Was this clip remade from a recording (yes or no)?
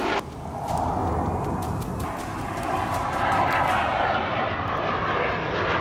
no